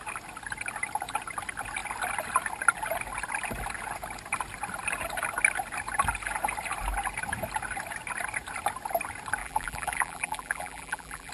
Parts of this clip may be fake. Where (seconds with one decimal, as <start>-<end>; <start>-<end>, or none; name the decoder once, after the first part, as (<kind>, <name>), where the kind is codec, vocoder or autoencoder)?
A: 9.4-11.3 (vocoder, BigVGAN v2)